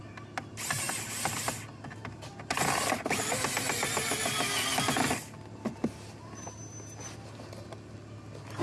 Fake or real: real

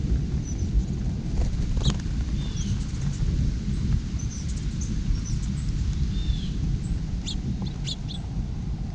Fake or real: real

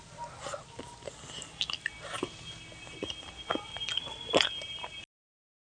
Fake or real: real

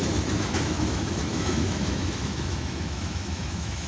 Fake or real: fake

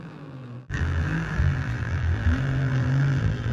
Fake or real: fake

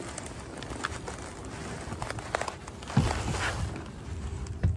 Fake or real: real